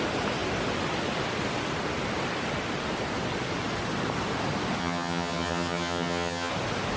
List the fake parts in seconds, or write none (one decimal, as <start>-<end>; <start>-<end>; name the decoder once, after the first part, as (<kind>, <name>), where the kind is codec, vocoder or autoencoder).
4.8-6.5 (vocoder, HiFi-GAN)